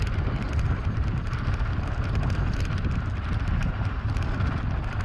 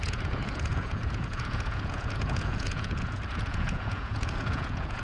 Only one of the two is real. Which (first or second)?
first